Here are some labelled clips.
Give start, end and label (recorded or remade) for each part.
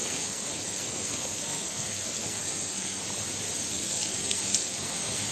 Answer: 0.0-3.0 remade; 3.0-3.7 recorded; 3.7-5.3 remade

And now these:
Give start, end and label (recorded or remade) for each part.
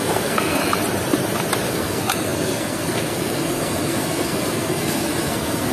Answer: 0.0-0.6 remade; 0.6-1.7 recorded; 1.7-5.7 remade